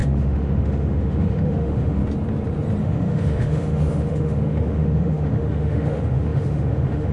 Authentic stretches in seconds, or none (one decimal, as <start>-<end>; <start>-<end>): 2.0-2.8